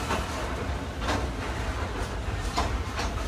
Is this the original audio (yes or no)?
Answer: yes